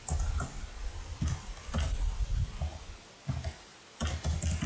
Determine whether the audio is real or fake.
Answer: real